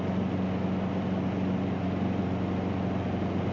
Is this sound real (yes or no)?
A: yes